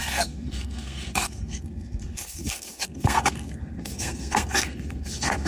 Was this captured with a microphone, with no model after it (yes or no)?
no